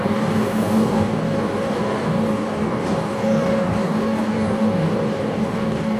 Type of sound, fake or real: fake